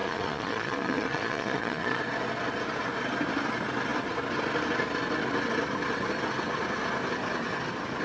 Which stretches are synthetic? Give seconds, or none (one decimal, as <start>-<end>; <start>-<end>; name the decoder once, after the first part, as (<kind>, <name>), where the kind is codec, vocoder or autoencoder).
0.0-2.0 (vocoder, Vocos)